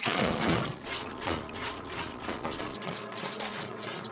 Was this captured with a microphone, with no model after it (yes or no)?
no